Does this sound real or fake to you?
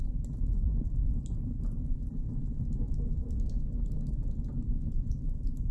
real